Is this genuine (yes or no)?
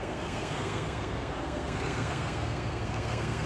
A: no